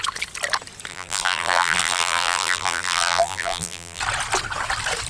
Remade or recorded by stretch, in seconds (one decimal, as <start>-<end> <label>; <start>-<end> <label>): 0.0-0.9 recorded; 0.9-4.0 remade; 4.0-5.1 recorded